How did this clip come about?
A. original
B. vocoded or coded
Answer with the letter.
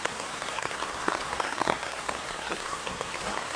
B